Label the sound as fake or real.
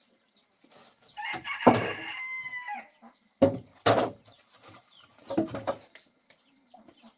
fake